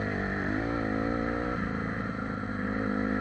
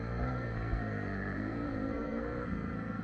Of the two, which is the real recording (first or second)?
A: first